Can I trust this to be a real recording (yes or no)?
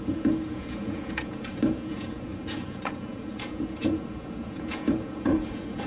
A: no